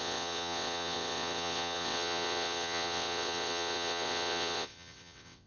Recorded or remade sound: remade